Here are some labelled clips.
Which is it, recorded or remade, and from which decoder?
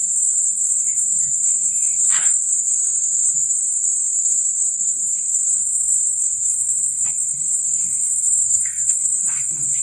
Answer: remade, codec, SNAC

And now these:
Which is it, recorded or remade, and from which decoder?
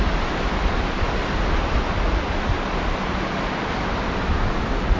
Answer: recorded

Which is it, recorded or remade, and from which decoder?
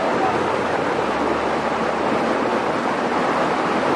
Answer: recorded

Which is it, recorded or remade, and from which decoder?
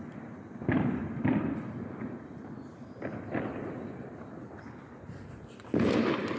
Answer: remade, vocoder, BigVGAN v2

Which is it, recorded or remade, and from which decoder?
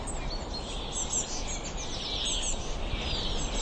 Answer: recorded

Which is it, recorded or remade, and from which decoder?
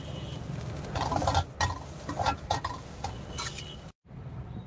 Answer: recorded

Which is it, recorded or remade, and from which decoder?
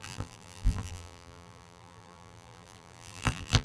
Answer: remade, vocoder, BigVGAN v2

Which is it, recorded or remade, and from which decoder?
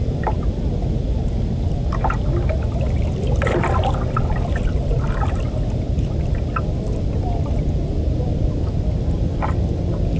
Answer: recorded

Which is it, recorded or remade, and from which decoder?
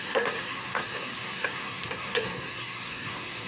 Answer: remade, codec, SNAC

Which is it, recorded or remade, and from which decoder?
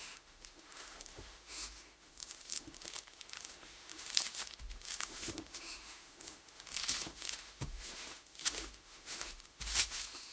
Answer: remade, autoencoder, DAC-VAE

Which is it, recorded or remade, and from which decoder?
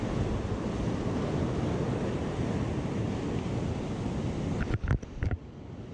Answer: recorded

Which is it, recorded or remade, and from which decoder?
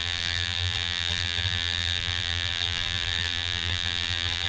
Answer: remade, vocoder, BigVGAN v2